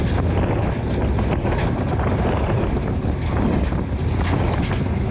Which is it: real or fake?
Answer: real